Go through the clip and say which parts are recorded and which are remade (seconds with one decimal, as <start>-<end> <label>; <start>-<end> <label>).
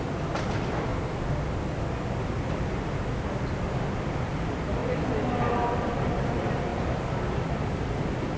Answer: 0.0-0.9 remade; 0.9-2.4 recorded; 2.4-4.8 remade; 4.8-5.5 recorded; 5.5-6.7 remade; 6.7-7.4 recorded; 7.4-8.4 remade